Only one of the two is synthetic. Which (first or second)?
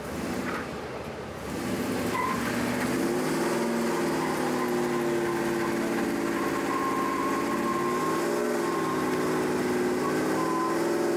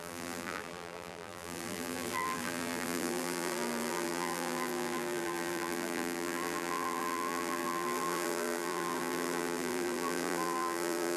second